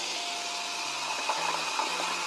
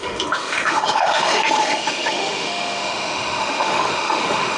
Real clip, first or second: first